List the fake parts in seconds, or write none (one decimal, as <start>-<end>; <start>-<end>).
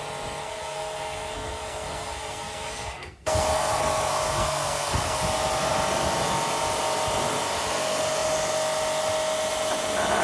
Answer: 0.4-5.2